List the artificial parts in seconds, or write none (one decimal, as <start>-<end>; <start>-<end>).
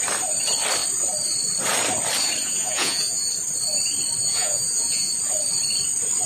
2.4-3.3; 4.2-5.1